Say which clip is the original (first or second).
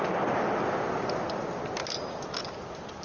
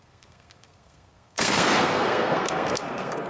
first